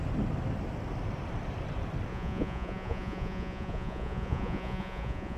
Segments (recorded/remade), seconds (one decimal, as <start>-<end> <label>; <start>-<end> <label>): 0.0-2.1 recorded; 2.1-5.4 remade